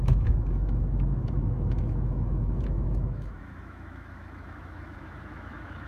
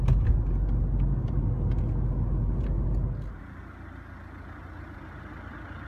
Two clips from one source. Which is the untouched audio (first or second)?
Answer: second